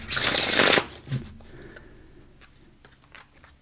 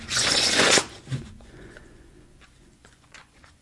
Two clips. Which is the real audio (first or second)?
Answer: first